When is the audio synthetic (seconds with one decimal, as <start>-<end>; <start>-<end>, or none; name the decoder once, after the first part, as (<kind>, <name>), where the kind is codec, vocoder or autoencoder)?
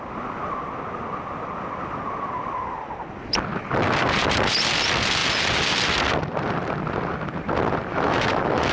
7.9-8.7 (autoencoder, DAC-VAE)